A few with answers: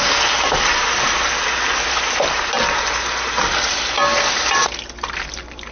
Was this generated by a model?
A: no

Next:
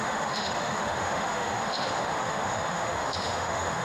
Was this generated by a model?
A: yes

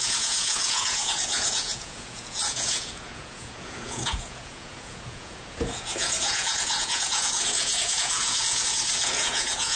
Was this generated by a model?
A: yes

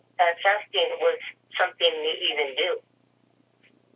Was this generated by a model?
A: no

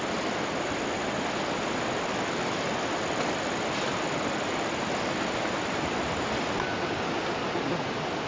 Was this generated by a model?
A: no